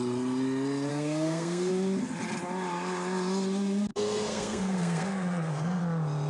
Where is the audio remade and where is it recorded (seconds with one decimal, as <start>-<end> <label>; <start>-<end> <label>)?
0.0-0.9 recorded; 0.9-1.7 remade; 1.7-3.9 recorded; 3.9-5.8 remade; 5.8-6.3 recorded